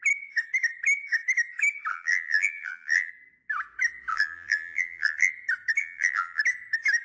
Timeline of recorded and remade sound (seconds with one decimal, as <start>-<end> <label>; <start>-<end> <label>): 0.0-1.9 recorded; 1.9-3.1 remade; 3.1-4.1 recorded; 4.1-5.3 remade; 5.3-5.8 recorded; 5.8-6.4 remade; 6.4-7.0 recorded